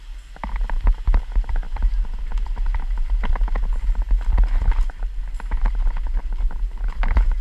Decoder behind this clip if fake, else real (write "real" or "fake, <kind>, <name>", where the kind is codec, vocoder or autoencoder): real